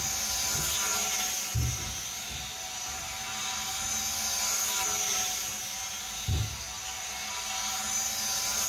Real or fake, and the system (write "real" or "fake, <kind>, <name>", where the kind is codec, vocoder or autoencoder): real